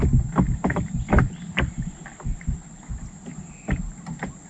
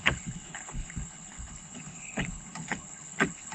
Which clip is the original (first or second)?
first